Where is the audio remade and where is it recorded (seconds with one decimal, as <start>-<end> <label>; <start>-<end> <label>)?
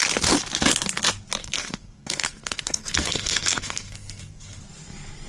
0.0-1.4 recorded; 1.4-4.6 remade; 4.6-5.3 recorded